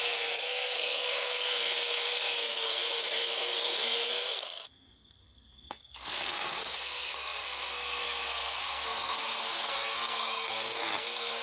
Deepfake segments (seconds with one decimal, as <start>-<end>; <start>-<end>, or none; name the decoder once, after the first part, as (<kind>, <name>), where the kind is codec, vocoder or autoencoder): 0.0-11.4 (codec, SNAC)